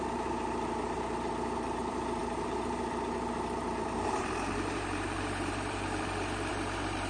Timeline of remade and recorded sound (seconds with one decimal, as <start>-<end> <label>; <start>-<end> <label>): 0.0-7.1 remade